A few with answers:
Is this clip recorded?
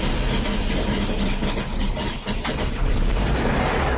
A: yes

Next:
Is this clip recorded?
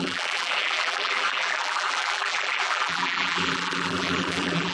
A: no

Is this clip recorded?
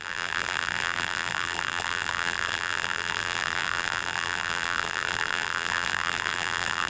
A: no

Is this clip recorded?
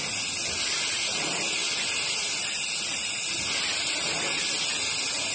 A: yes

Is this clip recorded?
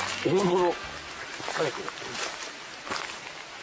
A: yes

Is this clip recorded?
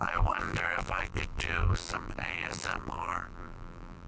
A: no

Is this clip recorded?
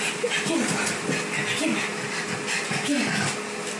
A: yes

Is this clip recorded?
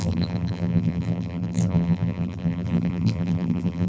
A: no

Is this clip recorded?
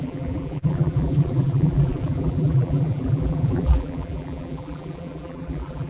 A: no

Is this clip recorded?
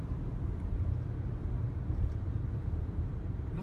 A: no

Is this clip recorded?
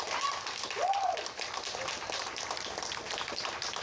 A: no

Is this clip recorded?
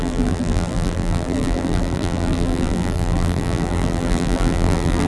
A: no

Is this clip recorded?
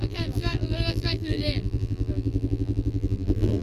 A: no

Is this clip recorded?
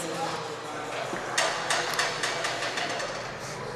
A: yes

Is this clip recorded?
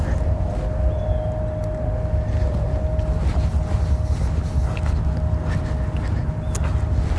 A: yes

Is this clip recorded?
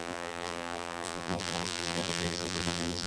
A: no